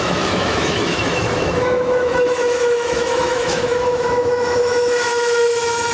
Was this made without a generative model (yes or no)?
no